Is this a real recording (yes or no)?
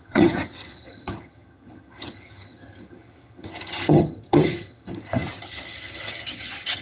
no